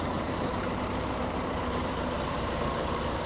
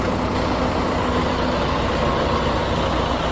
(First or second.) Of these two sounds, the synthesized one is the first